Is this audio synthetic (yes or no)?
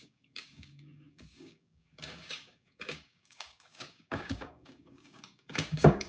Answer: yes